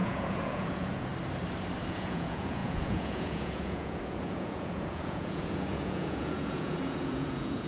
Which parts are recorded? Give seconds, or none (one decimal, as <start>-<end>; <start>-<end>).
1.1-1.9

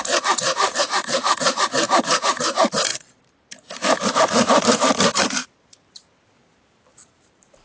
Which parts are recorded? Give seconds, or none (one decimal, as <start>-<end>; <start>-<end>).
2.9-4.1

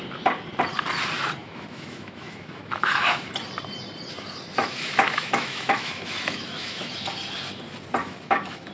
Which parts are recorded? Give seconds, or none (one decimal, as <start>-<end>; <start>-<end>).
0.0-1.4; 3.3-4.6; 6.9-8.0

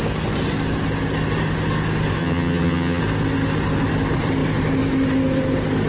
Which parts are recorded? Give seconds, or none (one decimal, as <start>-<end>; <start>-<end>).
0.0-2.2; 3.0-5.9

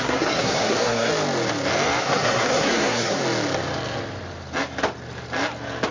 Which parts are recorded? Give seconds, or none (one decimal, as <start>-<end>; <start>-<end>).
1.1-2.0; 3.2-5.9

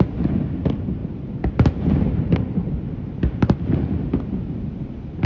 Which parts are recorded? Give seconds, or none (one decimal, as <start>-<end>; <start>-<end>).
0.0-5.3

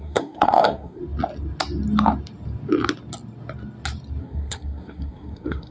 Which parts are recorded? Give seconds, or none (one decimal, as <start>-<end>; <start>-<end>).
1.0-4.2

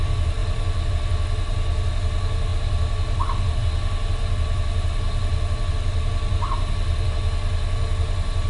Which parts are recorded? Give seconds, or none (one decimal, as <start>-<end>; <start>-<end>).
0.0-8.5